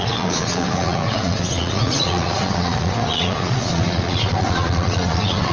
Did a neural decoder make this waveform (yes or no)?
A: yes